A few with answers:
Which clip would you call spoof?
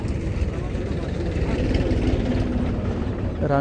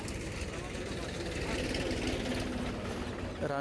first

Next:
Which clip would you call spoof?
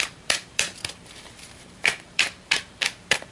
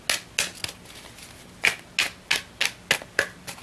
first